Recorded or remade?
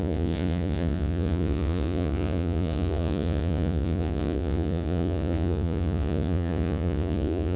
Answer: remade